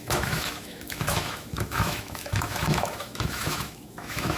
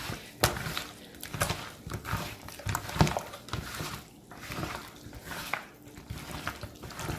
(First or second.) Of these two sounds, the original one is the second